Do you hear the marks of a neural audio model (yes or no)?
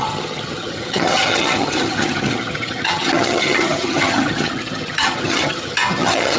yes